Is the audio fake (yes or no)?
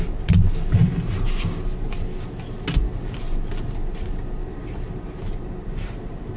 no